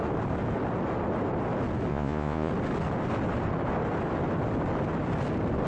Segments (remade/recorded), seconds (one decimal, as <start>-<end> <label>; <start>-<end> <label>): 0.0-1.9 recorded; 1.9-2.5 remade; 2.5-5.7 recorded